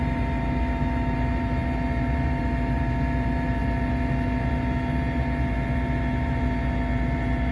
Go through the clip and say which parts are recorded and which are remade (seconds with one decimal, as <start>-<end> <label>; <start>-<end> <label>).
0.0-7.5 recorded